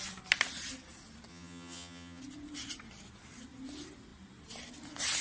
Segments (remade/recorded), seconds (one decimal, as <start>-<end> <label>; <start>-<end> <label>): 0.0-1.3 recorded; 1.3-2.2 remade; 2.2-5.2 recorded